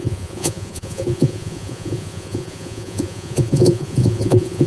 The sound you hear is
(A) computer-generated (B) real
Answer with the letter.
A